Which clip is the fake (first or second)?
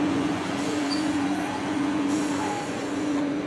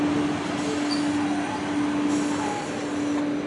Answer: first